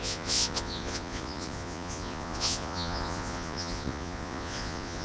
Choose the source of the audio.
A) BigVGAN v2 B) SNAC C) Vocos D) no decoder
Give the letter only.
C